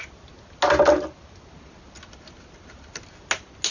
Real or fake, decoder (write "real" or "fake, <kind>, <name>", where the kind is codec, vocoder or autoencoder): real